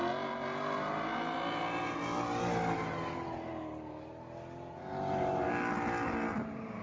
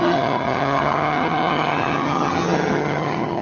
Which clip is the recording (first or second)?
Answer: first